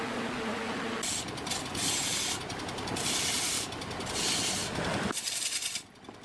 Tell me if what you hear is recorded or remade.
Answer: recorded